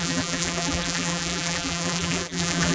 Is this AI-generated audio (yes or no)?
yes